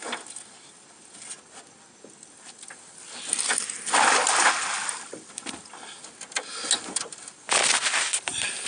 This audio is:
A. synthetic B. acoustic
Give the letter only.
B